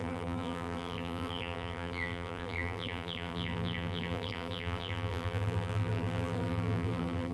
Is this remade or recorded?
remade